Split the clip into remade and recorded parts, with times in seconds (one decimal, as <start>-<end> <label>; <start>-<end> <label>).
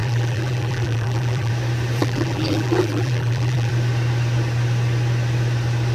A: 0.0-1.5 remade; 1.5-2.0 recorded; 2.0-3.7 remade; 3.7-5.9 recorded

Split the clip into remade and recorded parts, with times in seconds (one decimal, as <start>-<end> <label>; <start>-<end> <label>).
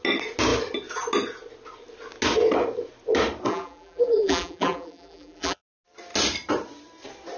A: 0.0-3.5 recorded; 3.5-5.6 remade; 5.6-7.4 recorded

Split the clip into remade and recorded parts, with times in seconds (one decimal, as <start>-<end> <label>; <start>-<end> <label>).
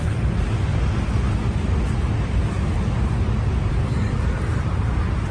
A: 0.0-0.7 remade; 0.7-3.7 recorded; 3.7-5.3 remade